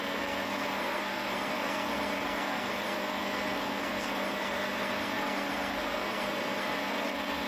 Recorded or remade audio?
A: remade